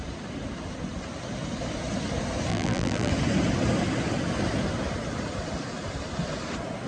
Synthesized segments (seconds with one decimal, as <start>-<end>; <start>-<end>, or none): 2.5-3.1